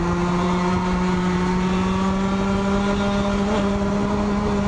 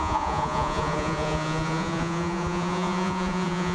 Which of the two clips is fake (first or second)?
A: second